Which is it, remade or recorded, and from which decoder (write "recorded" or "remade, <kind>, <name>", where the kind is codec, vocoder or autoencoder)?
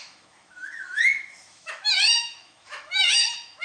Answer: remade, autoencoder, DAC-VAE